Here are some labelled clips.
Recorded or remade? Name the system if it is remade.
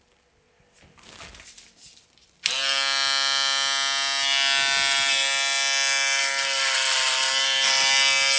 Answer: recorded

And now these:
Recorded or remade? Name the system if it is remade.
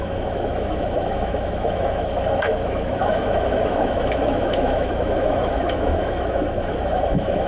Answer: remade, autoencoder, DAC-VAE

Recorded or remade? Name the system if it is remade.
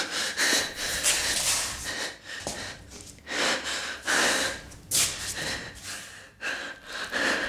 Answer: recorded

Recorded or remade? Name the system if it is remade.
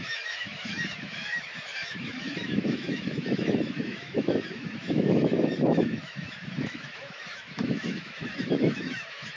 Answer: remade, autoencoder, DAC-VAE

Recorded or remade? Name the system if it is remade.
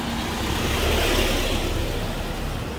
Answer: recorded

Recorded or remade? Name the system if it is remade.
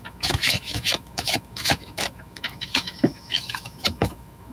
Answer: remade, autoencoder, DAC-VAE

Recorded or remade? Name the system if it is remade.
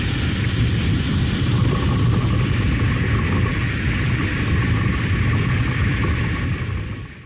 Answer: recorded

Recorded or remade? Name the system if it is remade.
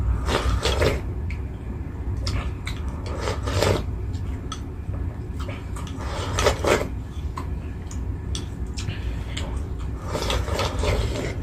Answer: recorded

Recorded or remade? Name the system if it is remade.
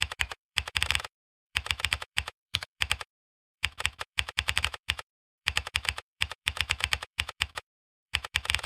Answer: remade, autoencoder, DAC-VAE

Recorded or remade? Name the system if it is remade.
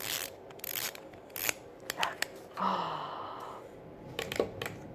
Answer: recorded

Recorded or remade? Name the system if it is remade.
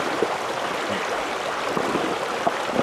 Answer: recorded